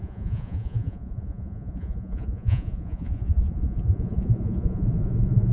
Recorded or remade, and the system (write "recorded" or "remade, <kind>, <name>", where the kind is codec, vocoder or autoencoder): remade, vocoder, Vocos